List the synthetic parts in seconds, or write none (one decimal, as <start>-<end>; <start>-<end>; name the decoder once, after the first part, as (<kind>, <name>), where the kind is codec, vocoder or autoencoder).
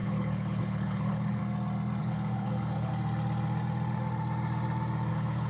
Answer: 0.0-1.4 (codec, HILCodec); 2.0-2.9; 5.1-5.5